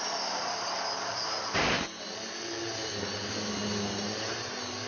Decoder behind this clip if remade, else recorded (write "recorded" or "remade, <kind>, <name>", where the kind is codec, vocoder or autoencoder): recorded